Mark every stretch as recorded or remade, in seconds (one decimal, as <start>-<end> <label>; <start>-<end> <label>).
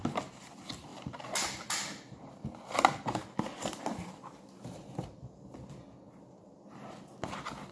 0.0-0.9 recorded; 0.9-2.3 remade; 2.3-7.7 recorded